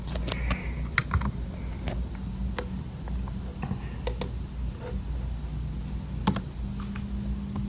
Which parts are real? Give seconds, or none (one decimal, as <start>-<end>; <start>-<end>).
0.0-7.7